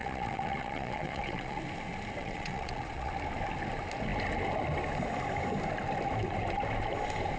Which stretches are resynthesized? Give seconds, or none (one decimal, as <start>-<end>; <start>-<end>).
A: 0.0-1.6; 2.2-3.1